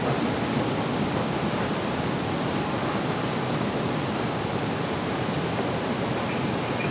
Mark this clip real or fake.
fake